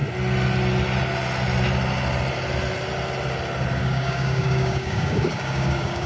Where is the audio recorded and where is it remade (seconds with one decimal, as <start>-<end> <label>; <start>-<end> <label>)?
0.0-3.8 recorded; 3.8-6.1 remade